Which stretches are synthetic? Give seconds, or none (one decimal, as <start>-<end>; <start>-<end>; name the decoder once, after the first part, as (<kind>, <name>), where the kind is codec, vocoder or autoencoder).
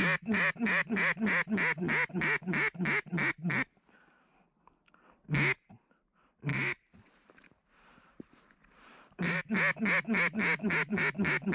6.5-9.4 (vocoder, BigVGAN v2)